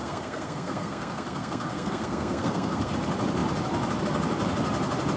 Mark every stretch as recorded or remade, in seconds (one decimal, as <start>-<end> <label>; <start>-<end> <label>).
0.0-2.9 remade; 2.9-5.2 recorded